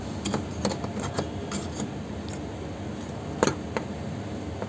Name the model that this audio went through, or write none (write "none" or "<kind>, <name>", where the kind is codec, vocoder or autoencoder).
none